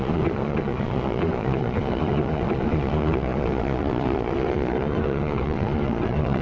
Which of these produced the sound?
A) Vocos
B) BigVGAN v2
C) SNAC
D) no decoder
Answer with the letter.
A